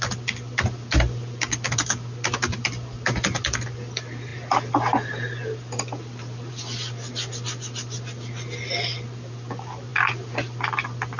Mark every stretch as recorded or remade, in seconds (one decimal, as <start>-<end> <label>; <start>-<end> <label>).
0.0-11.2 recorded